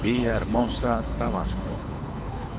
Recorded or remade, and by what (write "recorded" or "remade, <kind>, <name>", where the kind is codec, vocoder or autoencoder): remade, codec, HILCodec